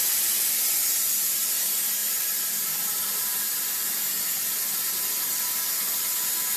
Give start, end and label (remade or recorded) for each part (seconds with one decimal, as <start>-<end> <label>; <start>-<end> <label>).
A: 0.0-6.6 recorded